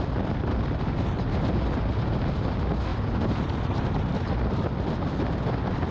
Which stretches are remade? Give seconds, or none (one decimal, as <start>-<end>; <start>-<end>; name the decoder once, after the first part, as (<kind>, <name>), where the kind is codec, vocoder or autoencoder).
none